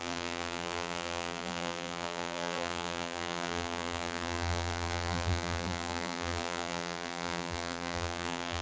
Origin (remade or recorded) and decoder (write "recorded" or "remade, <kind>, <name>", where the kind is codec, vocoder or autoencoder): remade, vocoder, BigVGAN v2